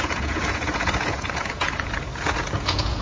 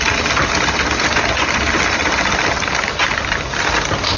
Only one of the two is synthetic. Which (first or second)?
first